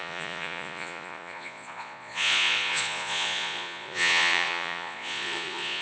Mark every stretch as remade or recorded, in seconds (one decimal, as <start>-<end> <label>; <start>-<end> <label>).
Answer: 0.0-5.8 remade